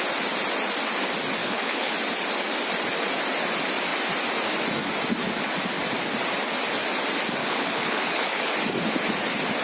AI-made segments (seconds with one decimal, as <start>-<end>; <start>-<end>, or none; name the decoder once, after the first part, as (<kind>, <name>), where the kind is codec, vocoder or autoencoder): 1.4-1.9 (codec, HILCodec); 7.4-8.5